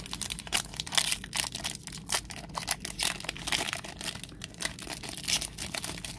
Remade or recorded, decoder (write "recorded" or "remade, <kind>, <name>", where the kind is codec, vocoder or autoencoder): recorded